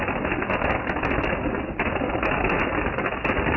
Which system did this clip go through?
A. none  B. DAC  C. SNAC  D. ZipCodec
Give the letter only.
A